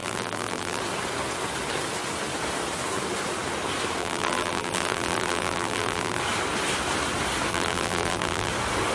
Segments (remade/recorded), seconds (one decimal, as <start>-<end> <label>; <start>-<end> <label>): 0.0-0.8 remade; 0.8-4.0 recorded; 4.0-6.2 remade; 6.2-7.5 recorded; 7.5-8.5 remade; 8.5-8.9 recorded